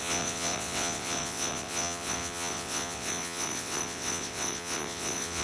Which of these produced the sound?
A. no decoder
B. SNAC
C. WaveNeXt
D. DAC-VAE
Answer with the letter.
C